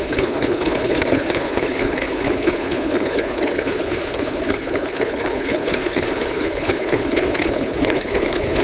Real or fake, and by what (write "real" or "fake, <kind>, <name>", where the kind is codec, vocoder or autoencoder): fake, codec, HILCodec